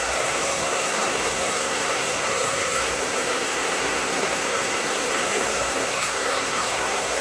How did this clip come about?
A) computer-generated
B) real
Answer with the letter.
A